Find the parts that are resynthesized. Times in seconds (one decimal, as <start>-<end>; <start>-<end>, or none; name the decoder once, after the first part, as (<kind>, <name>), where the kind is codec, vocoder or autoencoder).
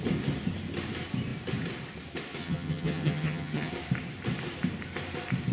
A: 2.4-3.7 (vocoder, HiFi-GAN)